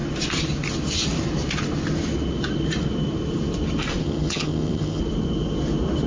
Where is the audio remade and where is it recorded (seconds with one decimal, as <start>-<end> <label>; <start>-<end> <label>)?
0.0-4.0 recorded; 4.0-5.0 remade; 5.0-6.1 recorded